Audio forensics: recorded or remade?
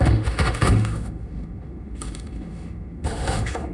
remade